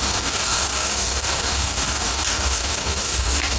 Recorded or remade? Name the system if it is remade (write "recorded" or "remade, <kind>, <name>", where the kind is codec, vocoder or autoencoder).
remade, codec, DAC